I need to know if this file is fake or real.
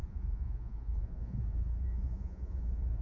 fake